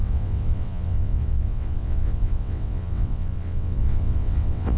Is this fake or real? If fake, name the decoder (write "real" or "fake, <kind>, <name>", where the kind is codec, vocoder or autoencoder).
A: fake, vocoder, WaveNeXt